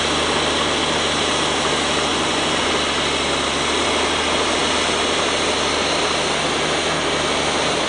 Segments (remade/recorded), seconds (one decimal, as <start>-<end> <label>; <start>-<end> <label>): 0.0-2.1 recorded; 2.1-2.7 remade; 2.7-7.9 recorded